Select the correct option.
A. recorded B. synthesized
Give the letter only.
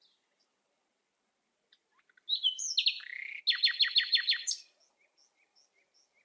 A